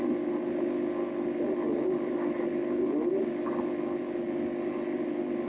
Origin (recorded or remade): recorded